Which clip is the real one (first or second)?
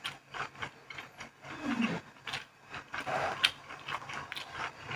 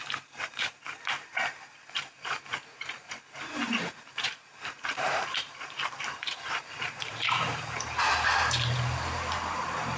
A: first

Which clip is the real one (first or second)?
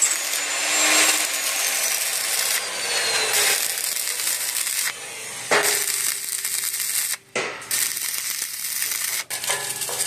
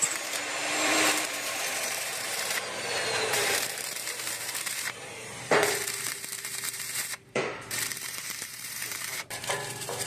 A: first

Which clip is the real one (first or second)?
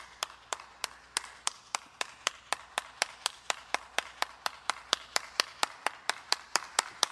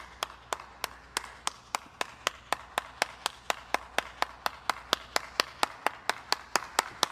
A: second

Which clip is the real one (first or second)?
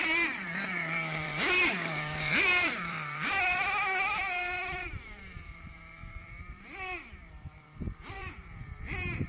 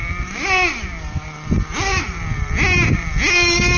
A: second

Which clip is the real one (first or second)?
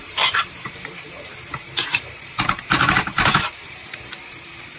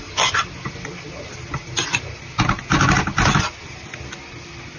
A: second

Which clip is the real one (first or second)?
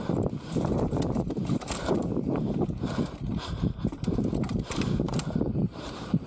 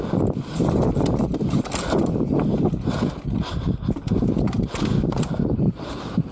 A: second